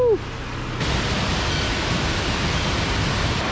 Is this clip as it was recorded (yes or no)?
yes